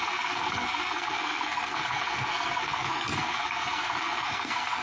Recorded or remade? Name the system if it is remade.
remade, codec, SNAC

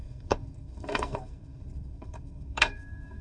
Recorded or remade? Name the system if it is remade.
remade, codec, SNAC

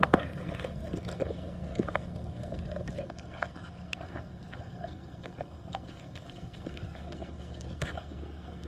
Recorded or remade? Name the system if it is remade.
remade, codec, SNAC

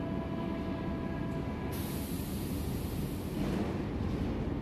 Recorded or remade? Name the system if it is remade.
recorded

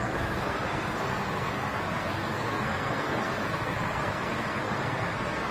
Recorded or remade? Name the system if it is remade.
remade, codec, SNAC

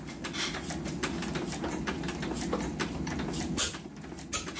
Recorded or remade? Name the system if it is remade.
recorded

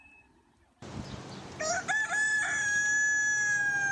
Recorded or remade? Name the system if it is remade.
recorded